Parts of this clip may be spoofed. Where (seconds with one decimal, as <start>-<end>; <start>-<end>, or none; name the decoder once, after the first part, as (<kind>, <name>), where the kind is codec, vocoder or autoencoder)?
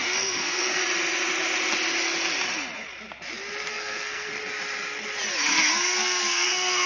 0.0-0.8 (codec, SNAC); 3.7-4.3; 5.5-6.9